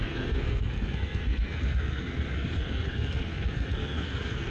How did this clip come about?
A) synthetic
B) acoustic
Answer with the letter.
A